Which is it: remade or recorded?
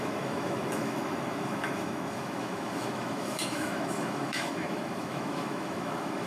remade